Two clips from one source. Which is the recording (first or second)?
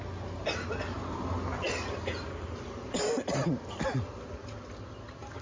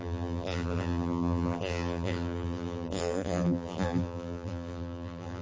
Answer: first